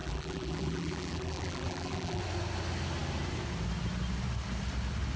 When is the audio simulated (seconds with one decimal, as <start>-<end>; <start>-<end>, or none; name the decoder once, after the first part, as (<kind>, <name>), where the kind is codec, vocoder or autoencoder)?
0.0-2.2 (vocoder, BigVGAN v2)